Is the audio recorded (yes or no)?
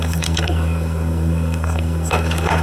no